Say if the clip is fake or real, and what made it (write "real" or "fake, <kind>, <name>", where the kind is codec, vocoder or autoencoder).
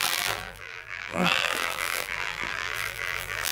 fake, vocoder, BigVGAN v2